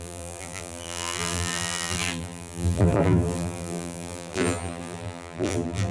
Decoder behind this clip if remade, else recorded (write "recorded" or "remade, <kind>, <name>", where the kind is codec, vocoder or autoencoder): remade, vocoder, BigVGAN v2